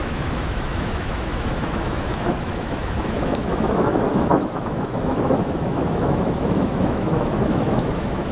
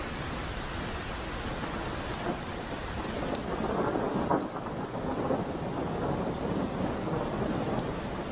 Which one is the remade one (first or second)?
first